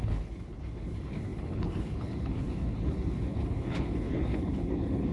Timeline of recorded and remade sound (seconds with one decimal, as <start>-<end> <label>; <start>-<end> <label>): 0.0-5.1 remade